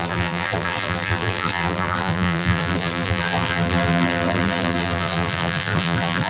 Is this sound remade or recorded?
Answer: remade